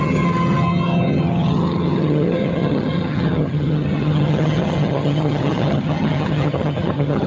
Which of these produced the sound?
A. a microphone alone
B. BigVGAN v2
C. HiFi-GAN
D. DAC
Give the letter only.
C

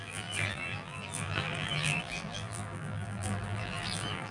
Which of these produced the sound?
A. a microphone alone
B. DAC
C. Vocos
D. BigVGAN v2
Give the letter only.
D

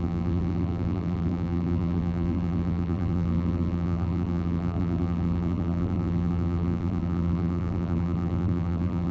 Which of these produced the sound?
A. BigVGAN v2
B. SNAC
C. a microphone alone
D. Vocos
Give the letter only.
A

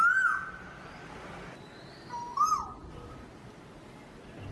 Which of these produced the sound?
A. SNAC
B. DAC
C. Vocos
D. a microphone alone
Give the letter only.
D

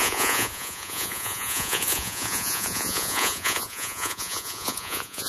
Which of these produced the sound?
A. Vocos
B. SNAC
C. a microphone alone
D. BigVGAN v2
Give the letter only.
A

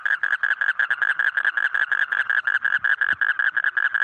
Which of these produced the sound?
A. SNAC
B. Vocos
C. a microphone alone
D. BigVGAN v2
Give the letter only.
C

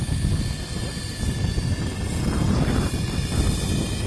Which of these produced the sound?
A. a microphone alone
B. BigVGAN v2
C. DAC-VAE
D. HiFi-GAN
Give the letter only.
A